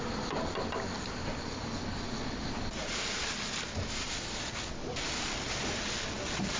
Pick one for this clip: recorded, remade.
recorded